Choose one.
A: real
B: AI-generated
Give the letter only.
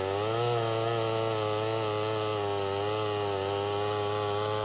A